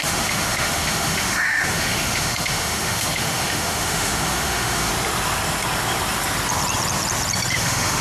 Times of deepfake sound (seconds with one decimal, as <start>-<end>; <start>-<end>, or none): 0.0-4.9; 7.5-8.0